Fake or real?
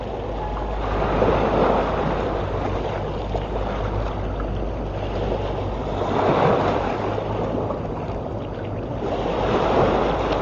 real